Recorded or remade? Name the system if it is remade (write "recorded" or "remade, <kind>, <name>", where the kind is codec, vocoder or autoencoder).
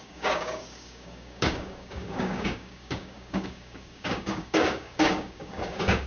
remade, codec, DAC